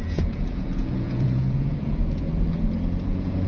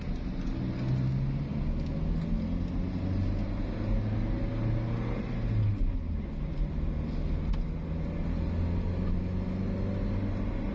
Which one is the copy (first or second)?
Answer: first